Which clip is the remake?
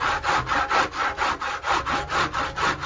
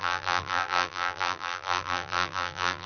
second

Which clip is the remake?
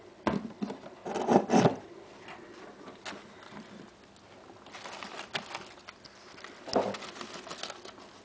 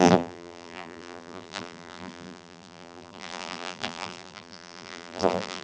second